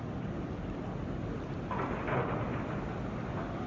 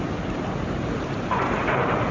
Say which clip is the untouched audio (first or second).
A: first